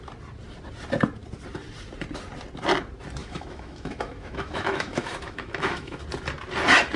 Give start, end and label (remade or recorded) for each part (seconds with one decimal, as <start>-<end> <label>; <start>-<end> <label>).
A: 0.0-3.2 recorded; 3.2-6.0 remade; 6.0-7.0 recorded